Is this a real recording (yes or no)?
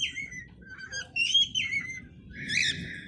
no